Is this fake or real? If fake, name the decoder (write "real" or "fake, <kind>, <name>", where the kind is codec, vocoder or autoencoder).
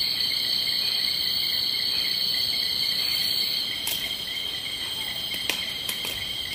real